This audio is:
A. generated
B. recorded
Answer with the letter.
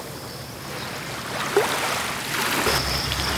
B